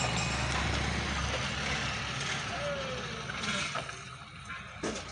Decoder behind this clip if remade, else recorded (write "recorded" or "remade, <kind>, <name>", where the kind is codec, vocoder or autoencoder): recorded